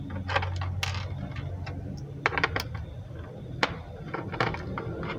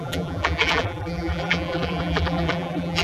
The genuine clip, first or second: first